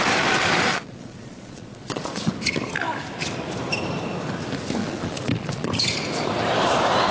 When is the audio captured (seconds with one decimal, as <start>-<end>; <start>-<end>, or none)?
0.0-0.7; 2.3-4.8; 5.7-7.1